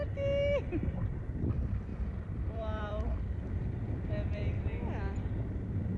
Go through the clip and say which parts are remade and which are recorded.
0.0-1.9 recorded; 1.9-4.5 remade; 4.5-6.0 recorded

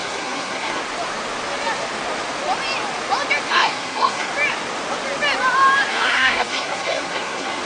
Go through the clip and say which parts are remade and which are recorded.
0.0-0.8 remade; 0.8-3.5 recorded; 3.5-4.3 remade; 4.3-5.9 recorded; 5.9-7.6 remade

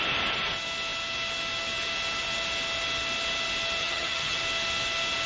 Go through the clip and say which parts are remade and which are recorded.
0.0-3.8 recorded; 3.8-4.4 remade; 4.4-5.3 recorded